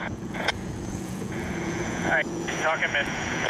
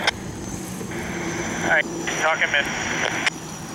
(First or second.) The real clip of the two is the second